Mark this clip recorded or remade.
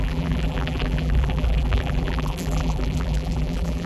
remade